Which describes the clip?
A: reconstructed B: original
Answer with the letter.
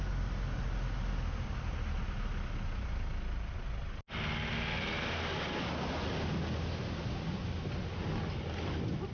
B